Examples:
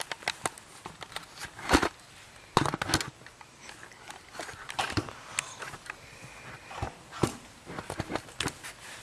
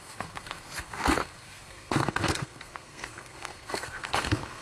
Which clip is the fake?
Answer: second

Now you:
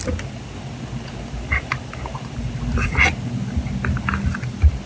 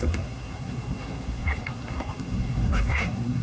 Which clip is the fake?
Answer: second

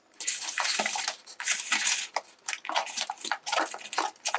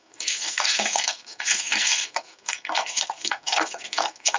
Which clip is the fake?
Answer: second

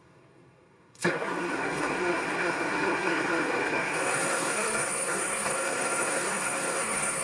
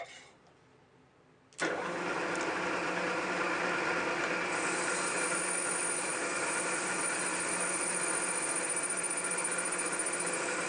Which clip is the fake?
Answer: first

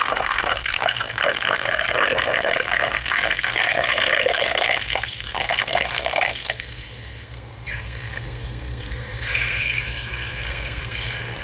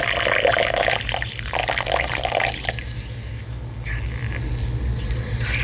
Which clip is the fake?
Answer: first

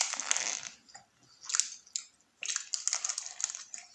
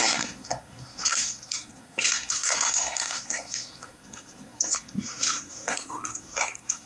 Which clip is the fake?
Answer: second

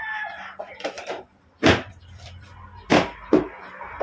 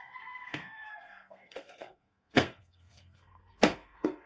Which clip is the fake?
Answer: second